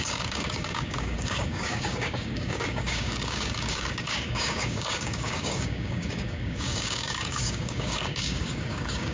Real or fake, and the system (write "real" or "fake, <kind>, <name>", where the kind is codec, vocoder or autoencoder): fake, codec, DAC